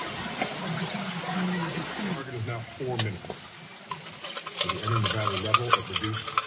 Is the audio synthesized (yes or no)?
no